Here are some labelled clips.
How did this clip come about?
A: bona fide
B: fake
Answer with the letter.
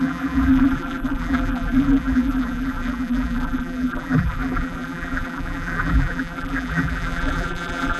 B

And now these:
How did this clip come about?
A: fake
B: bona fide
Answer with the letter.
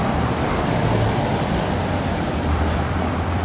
A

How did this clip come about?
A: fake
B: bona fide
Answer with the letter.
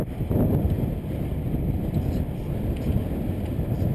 B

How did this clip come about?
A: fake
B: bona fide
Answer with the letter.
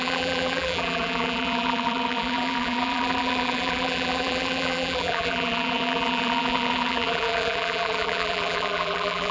A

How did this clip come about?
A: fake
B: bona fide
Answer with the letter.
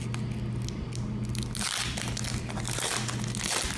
B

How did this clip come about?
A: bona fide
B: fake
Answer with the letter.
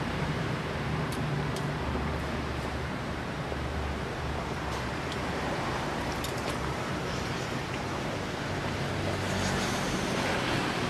B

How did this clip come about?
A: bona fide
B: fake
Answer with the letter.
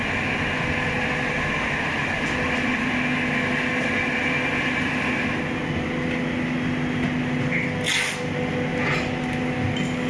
A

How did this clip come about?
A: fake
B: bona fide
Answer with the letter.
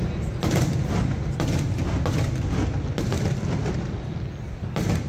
B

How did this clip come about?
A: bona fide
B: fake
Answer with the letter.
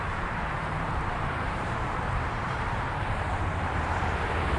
B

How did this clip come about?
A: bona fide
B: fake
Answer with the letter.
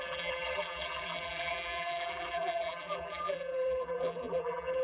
B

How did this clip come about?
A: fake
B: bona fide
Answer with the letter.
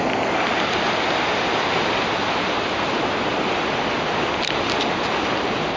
B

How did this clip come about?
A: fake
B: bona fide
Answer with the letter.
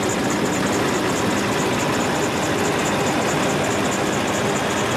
B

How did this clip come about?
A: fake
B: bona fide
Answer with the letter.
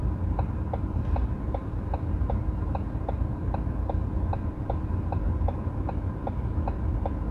B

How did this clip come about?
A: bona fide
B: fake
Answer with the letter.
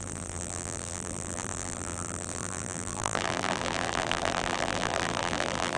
B